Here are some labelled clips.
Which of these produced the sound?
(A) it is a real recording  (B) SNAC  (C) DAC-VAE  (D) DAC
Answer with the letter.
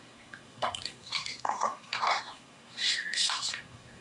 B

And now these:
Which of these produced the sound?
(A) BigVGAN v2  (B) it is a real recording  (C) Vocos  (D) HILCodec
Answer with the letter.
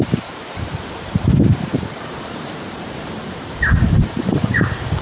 A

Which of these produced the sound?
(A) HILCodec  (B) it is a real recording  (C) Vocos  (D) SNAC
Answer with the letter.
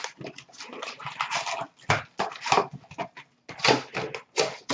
B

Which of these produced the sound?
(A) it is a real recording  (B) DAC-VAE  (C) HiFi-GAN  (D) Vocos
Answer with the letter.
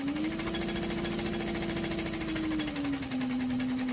A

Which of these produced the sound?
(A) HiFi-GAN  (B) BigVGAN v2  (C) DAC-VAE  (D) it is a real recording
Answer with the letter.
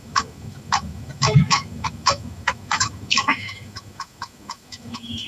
C